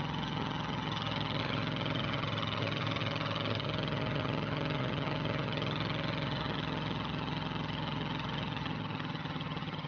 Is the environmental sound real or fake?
fake